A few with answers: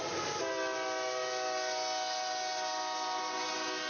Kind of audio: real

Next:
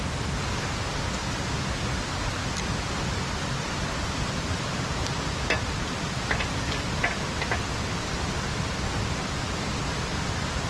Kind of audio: real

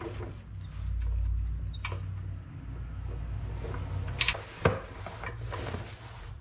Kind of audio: real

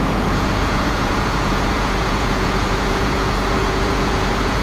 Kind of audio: fake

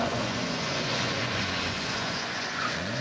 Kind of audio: fake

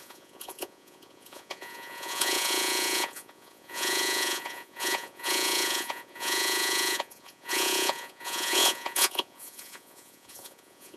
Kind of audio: fake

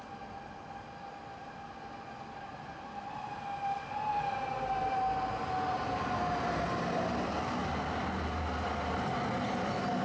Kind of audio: real